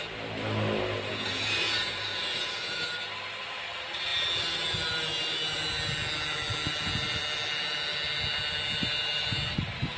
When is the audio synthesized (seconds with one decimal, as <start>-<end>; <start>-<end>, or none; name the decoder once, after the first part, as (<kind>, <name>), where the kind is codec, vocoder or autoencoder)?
1.1-2.9 (vocoder, Vocos)